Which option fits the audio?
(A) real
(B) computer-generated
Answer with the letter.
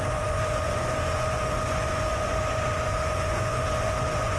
B